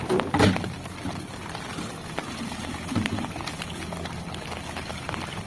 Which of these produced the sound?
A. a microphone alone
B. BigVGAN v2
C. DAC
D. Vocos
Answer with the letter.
A